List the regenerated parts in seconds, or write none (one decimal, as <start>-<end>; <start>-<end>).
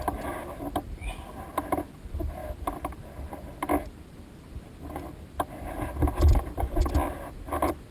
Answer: none